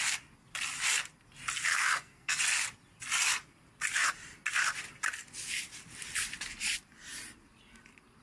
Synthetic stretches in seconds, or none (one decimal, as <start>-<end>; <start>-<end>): 1.7-2.4